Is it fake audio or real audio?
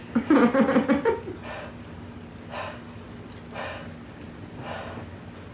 real